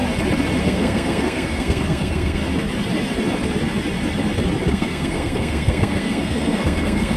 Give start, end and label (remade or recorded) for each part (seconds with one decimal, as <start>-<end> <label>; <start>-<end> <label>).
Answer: 0.0-0.6 recorded; 0.6-2.4 remade; 2.4-4.7 recorded; 4.7-7.2 remade